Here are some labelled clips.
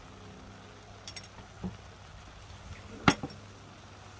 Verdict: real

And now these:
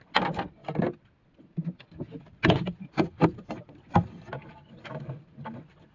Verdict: real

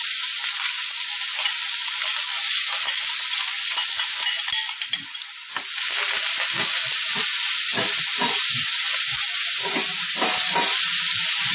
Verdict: real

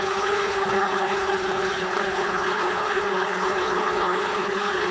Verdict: fake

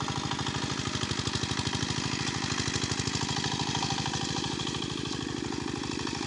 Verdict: real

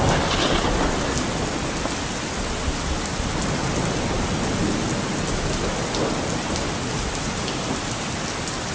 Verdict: real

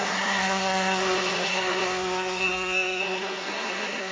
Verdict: fake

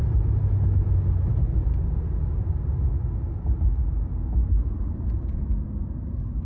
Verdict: real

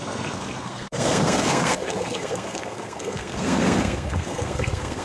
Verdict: fake